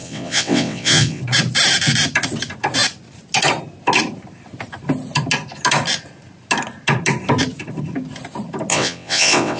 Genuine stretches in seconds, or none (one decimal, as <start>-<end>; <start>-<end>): 1.2-8.7